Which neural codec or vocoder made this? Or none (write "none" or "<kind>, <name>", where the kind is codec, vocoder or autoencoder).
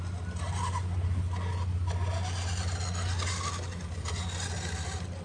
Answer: none